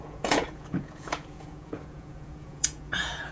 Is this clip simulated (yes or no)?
yes